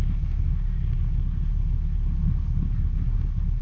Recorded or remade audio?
remade